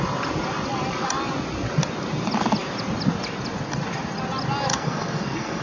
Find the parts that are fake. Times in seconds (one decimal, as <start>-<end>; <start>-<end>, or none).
4.7-5.6